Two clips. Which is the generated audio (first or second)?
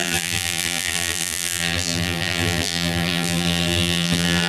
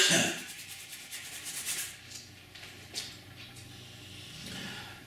first